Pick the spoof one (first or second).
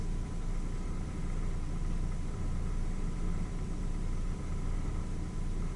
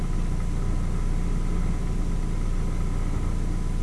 first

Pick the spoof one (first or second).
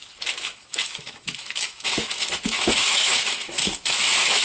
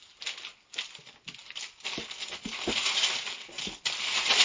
first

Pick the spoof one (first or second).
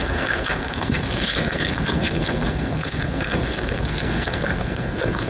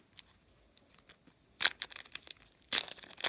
first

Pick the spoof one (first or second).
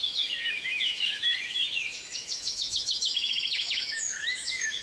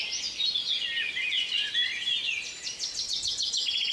first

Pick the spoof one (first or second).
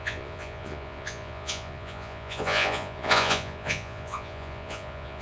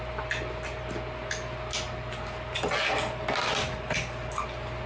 first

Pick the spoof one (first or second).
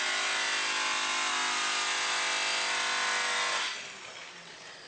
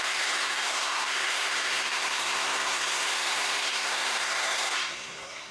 second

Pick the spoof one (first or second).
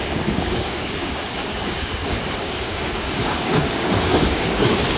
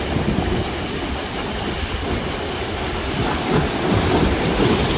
first